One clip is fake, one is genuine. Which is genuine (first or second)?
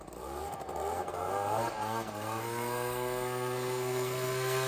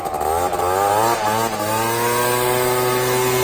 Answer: second